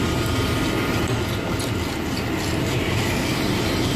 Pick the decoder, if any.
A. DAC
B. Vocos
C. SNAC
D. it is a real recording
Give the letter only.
D